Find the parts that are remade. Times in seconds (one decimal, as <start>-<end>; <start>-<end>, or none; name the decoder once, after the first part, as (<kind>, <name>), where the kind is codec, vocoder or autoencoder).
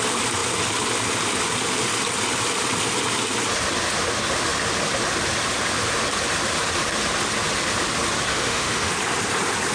8.3-8.9 (autoencoder, DAC-VAE)